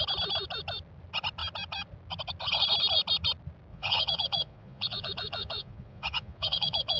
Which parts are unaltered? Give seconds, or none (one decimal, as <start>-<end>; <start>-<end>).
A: 0.0-3.7